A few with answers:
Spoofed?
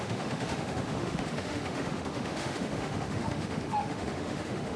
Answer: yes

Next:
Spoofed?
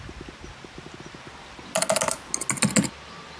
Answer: no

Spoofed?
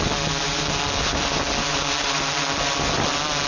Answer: no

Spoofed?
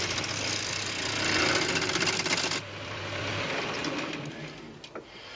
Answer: no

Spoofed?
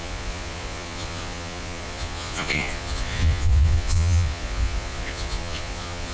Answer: yes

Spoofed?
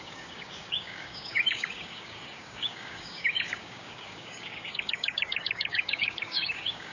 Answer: yes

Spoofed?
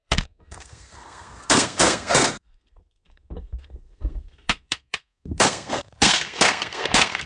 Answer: yes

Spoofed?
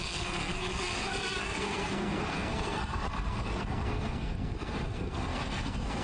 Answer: yes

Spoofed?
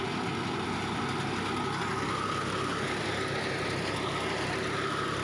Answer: no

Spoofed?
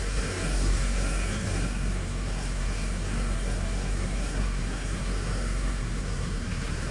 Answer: yes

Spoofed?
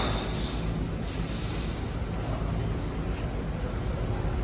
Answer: no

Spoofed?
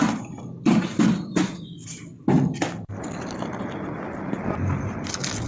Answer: no